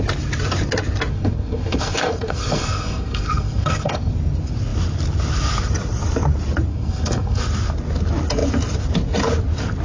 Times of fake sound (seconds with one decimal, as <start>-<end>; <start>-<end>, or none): 1.1-4.1; 6.7-7.4